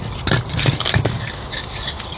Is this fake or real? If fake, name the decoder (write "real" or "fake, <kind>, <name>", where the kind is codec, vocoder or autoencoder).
real